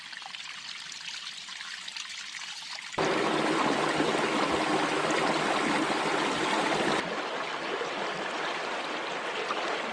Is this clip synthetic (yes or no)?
no